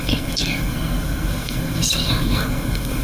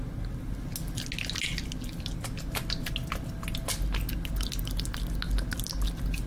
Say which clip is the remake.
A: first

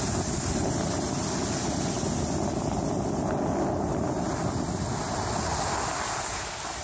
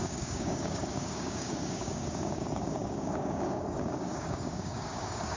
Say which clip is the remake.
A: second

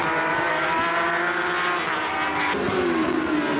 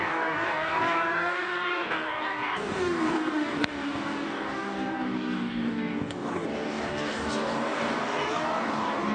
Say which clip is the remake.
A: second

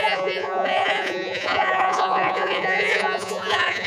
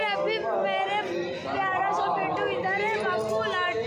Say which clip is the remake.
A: first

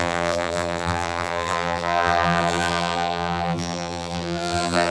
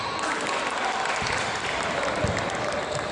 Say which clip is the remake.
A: first